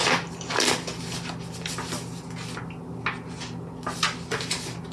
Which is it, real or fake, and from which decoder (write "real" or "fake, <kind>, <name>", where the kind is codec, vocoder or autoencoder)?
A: real